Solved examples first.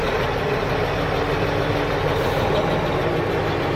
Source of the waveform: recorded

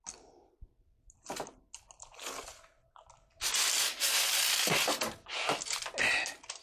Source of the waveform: recorded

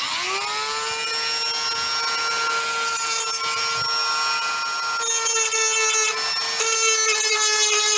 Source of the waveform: recorded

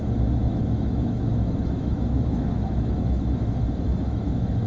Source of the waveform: remade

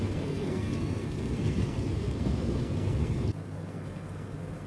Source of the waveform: remade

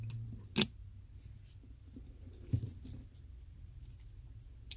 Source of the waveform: recorded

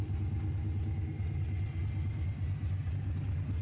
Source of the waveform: recorded